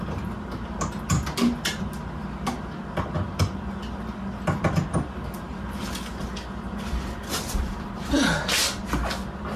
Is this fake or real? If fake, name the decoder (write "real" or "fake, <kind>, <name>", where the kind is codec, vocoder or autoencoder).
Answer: real